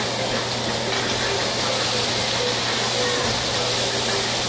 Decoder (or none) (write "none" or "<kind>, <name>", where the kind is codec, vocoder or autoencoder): none